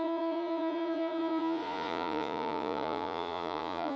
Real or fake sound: fake